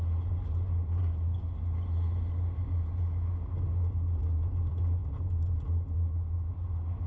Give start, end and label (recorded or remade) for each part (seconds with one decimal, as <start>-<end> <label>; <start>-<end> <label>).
0.0-7.1 recorded